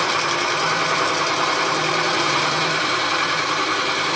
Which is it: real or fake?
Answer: fake